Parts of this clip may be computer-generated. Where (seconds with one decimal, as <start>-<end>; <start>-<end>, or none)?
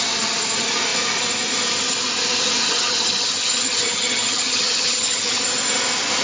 2.6-5.4